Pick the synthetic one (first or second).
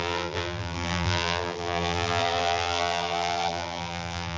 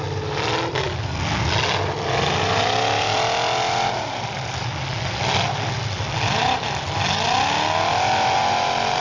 first